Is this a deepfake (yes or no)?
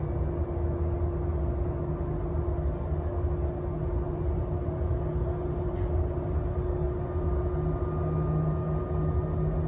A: no